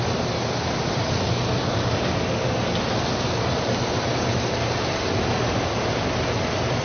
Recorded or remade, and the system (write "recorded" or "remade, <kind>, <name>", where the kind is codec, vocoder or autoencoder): recorded